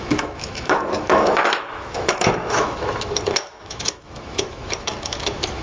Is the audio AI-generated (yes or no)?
yes